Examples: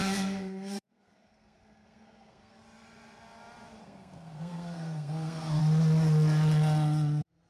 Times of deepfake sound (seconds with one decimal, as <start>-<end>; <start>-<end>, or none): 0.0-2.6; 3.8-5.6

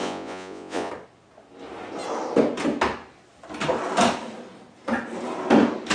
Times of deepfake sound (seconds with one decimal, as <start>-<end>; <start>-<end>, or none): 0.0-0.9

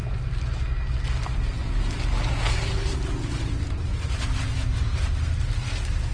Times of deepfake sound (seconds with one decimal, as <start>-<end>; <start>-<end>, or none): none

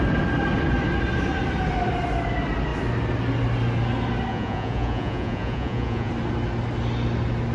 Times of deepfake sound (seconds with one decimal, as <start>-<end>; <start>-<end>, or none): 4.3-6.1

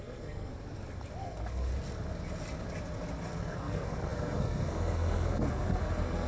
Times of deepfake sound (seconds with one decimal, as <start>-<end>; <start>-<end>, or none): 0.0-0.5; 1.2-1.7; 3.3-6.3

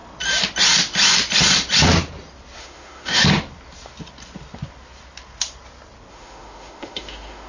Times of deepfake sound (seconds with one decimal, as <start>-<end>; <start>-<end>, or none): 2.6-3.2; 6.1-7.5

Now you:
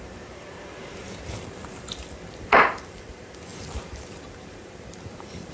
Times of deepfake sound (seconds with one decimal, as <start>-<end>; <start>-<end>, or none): 0.0-5.5

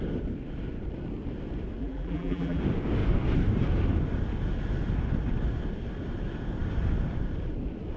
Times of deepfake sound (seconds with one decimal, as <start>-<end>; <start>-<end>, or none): 1.8-2.6